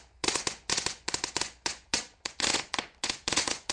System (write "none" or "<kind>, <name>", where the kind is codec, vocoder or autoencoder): vocoder, Vocos